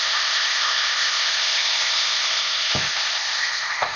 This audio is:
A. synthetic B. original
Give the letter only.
A